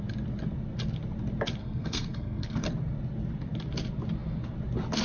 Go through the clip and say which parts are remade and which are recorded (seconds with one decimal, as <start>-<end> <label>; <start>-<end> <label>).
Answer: 0.0-1.6 recorded; 1.6-2.7 remade; 2.7-5.0 recorded